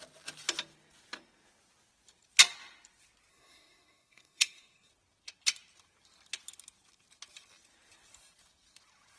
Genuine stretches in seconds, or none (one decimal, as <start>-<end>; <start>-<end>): 0.0-3.3; 4.9-9.2